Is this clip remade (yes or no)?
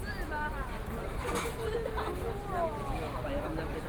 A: no